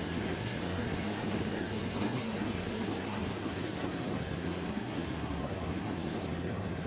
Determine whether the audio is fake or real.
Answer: fake